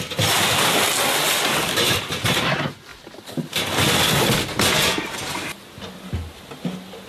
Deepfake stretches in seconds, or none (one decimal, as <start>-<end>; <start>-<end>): none